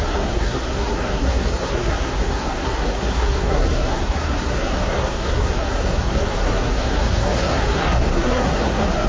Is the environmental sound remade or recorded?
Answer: remade